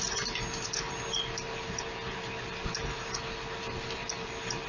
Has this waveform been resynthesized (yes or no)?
no